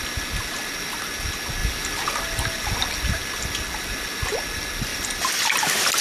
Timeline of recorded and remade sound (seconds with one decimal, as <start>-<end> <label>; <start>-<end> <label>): 0.0-4.9 recorded; 4.9-5.6 remade; 5.6-6.0 recorded